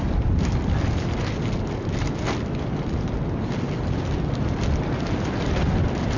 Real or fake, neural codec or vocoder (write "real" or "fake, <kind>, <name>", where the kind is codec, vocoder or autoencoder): real